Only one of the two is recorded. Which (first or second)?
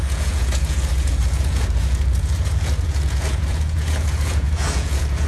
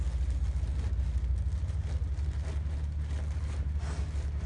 second